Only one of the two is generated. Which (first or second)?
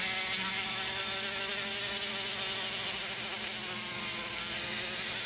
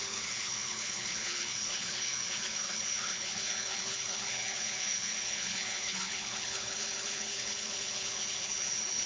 second